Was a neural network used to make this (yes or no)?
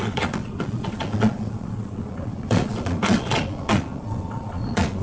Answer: yes